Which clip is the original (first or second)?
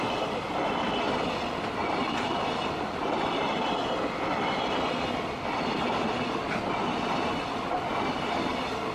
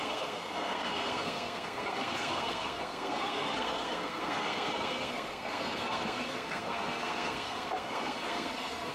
first